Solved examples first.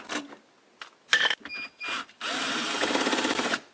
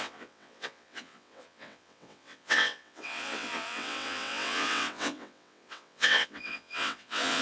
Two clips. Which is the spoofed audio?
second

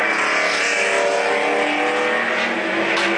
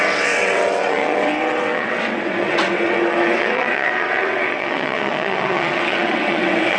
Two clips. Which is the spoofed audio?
second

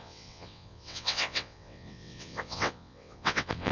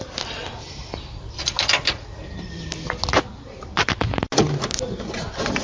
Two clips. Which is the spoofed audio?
first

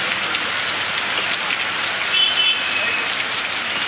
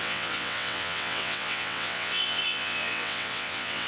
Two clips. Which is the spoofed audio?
second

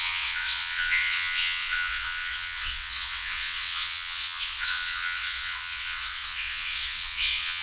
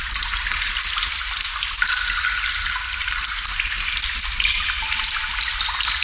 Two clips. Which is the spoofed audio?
first